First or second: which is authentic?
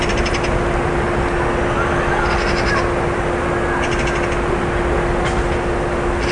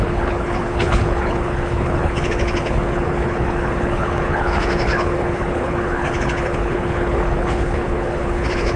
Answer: first